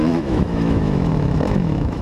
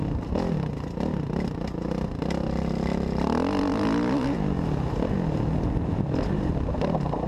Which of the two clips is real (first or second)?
second